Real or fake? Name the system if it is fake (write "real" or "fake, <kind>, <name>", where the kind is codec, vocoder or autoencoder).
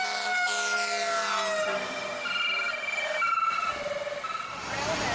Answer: real